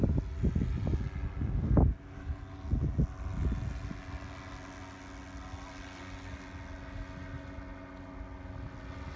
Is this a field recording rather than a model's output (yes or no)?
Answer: yes